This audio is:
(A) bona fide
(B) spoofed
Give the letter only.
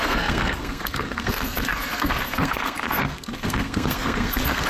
B